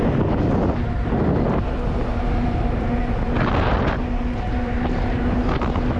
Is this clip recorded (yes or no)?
yes